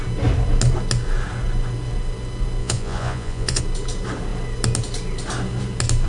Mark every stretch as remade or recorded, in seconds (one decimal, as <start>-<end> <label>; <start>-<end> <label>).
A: 0.0-2.6 recorded; 2.6-3.6 remade; 3.6-6.1 recorded